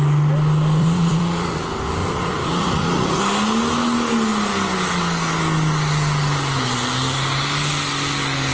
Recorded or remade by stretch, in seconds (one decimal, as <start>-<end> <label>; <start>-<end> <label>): 0.0-0.8 recorded; 0.8-1.6 remade; 1.6-2.0 recorded; 2.0-3.2 remade; 3.2-8.5 recorded